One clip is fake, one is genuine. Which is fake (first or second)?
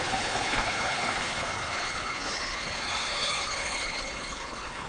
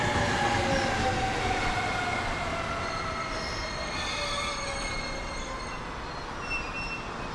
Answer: first